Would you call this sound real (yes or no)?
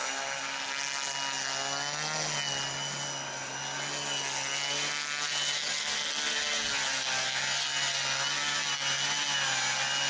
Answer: yes